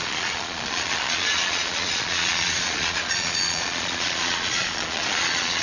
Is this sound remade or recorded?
remade